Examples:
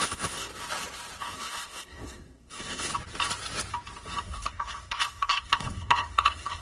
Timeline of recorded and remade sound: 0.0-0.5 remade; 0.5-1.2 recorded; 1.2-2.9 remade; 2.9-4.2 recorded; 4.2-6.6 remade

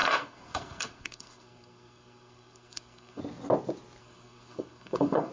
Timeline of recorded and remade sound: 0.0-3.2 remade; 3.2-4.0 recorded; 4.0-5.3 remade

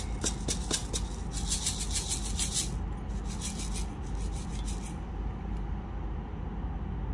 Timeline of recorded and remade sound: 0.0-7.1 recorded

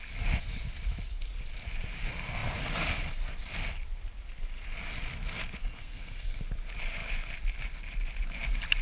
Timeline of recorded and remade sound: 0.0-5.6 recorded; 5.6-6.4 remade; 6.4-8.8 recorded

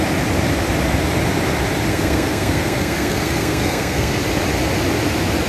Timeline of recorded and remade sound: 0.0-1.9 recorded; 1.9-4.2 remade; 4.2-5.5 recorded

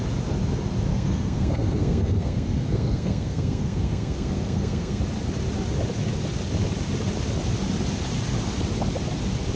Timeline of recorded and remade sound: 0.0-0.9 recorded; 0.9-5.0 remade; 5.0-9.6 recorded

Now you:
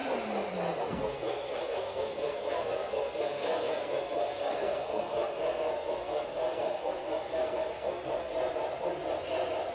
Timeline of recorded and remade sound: 0.0-0.8 recorded; 0.8-8.3 remade; 8.3-9.7 recorded

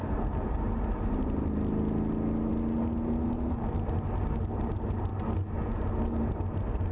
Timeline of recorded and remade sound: 0.0-6.9 recorded